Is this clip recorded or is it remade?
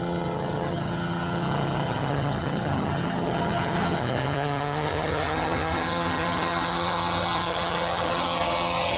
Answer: remade